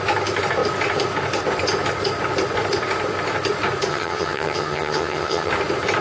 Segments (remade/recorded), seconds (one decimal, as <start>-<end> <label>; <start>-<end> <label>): 0.0-3.9 recorded; 3.9-5.5 remade; 5.5-6.0 recorded